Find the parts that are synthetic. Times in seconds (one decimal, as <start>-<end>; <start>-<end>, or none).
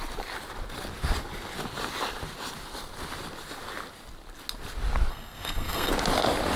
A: 5.1-5.9